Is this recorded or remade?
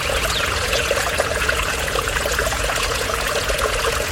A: remade